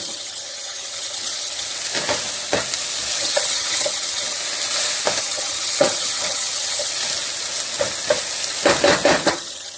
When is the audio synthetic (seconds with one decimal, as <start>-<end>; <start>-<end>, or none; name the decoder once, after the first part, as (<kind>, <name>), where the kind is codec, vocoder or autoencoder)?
0.0-1.7 (vocoder, HiFi-GAN); 3.2-4.4; 5.2-6.9; 9.3-9.8